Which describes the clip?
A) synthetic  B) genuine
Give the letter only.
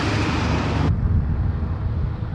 B